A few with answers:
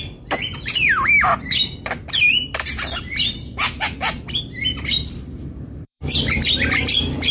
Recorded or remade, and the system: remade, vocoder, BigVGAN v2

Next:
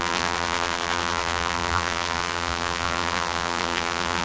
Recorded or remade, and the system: remade, vocoder, BigVGAN v2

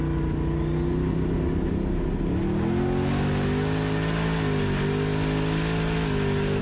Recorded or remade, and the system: recorded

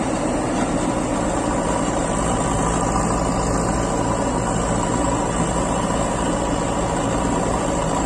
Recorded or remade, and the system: recorded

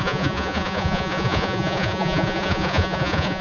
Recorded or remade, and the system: remade, vocoder, Vocos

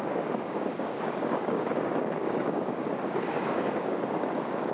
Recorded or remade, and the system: remade, codec, DAC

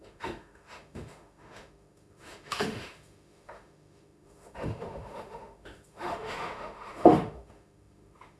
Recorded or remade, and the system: remade, autoencoder, DAC-VAE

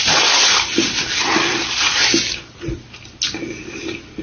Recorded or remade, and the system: recorded